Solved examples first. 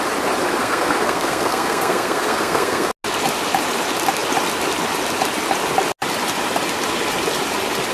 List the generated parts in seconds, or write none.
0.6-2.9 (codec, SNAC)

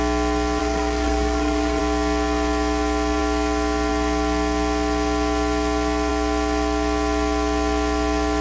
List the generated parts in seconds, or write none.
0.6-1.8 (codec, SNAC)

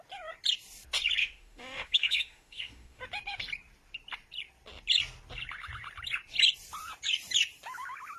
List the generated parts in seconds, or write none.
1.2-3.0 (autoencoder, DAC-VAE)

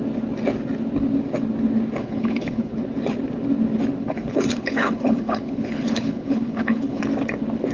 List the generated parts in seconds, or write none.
2.0-2.7 (codec, HILCodec); 4.0-7.0